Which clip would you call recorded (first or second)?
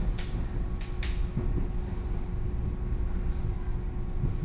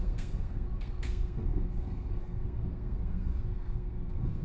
first